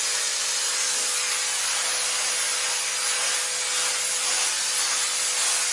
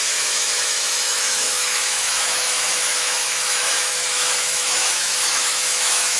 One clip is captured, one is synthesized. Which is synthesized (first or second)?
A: second